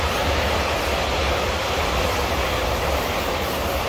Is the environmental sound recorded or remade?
recorded